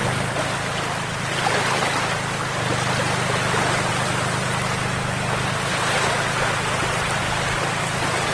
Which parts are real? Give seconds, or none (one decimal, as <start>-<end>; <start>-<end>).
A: 0.0-8.3